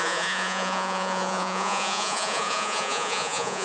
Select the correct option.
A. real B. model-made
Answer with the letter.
B